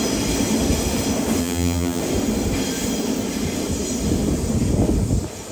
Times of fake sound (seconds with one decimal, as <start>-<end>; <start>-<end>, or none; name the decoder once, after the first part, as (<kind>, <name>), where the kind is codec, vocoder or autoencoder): 1.4-2.0 (vocoder, BigVGAN v2)